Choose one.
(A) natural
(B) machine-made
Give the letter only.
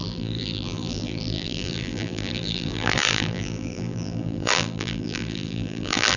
B